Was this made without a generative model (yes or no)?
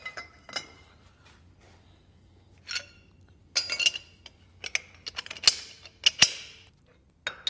yes